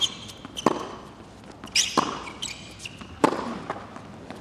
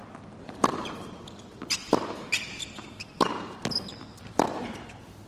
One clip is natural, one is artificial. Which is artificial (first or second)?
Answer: second